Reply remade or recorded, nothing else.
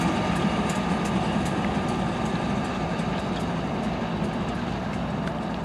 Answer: recorded